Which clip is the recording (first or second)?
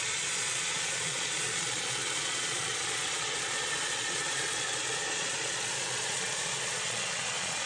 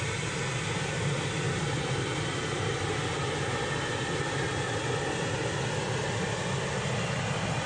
second